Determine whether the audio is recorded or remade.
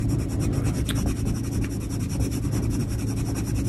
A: recorded